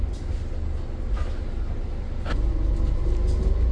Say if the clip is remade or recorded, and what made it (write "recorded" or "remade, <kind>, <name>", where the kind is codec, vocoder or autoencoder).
recorded